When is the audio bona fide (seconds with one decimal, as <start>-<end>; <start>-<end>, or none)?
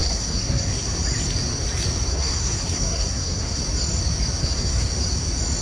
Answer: 0.7-2.1; 3.6-4.4; 4.9-5.6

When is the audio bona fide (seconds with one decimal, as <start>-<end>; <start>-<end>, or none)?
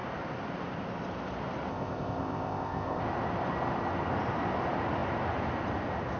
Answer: 0.0-1.7; 3.0-6.2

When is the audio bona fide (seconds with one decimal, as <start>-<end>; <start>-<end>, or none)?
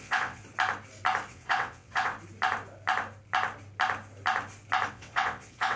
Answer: 0.4-1.3; 2.1-4.9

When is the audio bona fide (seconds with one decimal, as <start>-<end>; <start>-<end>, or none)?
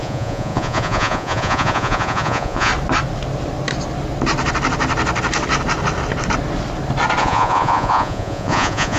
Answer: 2.7-7.2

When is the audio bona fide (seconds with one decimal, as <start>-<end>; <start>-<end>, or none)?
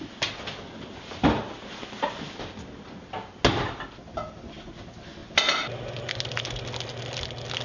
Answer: 0.0-7.6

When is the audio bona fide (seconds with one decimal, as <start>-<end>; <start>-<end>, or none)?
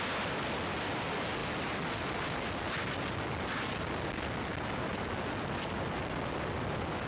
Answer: 0.0-7.1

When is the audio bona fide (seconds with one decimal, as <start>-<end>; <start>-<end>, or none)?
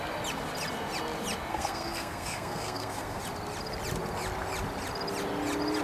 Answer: 0.0-1.5; 3.2-5.8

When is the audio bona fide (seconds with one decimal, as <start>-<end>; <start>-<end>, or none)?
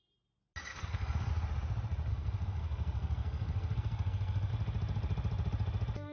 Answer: 0.0-0.7; 1.3-2.1; 4.5-6.1